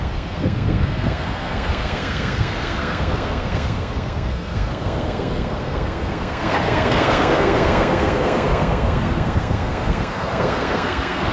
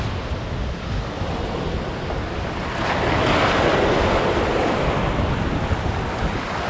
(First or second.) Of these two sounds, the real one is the second